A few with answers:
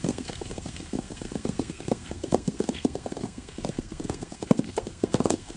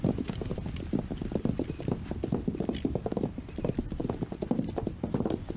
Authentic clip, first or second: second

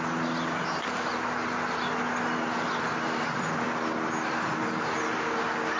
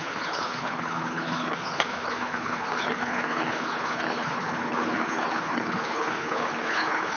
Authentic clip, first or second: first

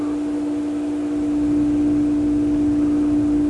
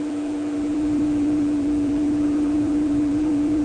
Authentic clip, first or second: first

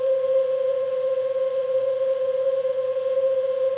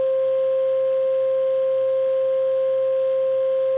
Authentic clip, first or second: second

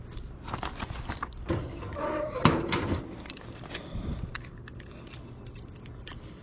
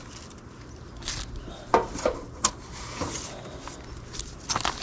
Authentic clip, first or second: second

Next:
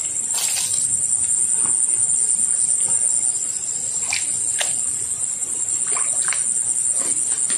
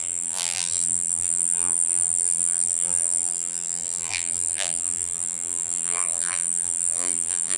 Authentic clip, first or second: first